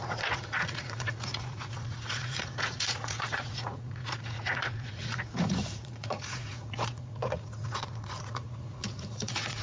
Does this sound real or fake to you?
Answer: fake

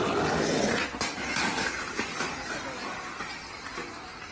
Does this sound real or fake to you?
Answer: real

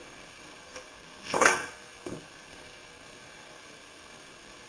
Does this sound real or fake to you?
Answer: fake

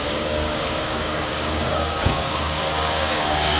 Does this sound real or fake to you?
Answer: fake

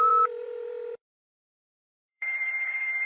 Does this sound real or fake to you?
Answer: fake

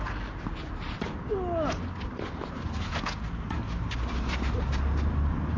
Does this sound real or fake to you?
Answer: real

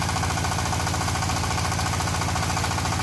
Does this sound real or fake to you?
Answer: real